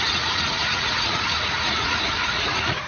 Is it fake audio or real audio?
fake